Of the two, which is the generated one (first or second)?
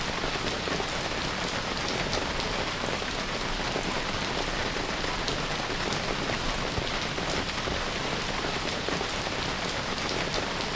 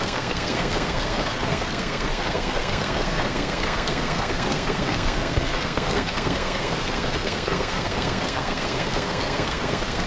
second